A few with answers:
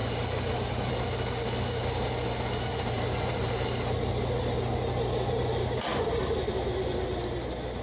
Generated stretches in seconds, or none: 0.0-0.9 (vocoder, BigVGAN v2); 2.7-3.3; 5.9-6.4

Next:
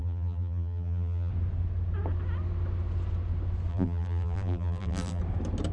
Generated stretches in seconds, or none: 0.0-1.3 (vocoder, BigVGAN v2); 3.7-5.2

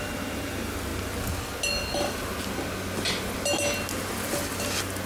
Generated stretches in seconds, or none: none

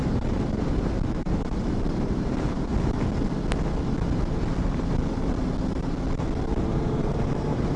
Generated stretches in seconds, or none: 0.0-2.7 (vocoder, BigVGAN v2); 6.7-7.8

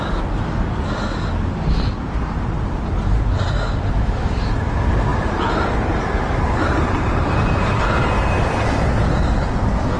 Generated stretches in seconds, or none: 5.1-7.4 (vocoder, BigVGAN v2)

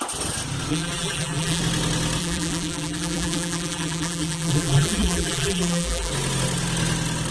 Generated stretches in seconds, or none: 0.7-1.6 (vocoder, BigVGAN v2); 2.2-6.1

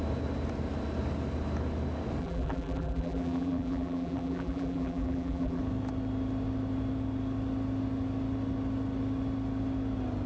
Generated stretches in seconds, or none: 2.2-5.6 (vocoder, BigVGAN v2)